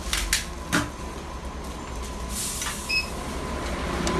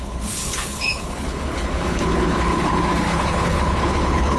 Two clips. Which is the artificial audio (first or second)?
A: second